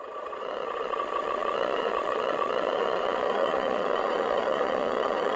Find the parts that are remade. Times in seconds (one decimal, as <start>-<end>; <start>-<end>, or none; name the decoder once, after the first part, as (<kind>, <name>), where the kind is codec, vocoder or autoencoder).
0.0-5.4 (vocoder, Vocos)